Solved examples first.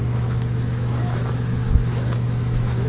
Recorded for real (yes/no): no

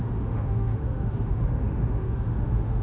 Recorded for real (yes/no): no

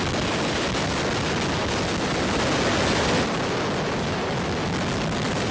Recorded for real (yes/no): yes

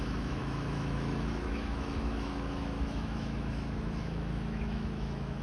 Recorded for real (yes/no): no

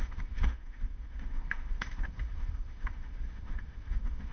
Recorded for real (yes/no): no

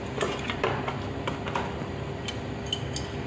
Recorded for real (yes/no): yes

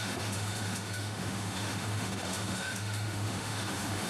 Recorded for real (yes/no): no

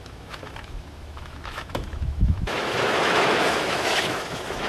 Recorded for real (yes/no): no